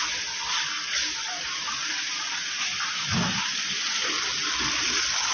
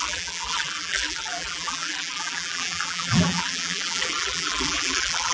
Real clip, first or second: first